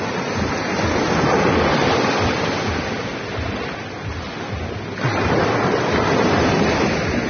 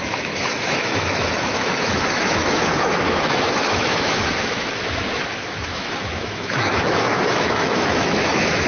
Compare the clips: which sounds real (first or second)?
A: first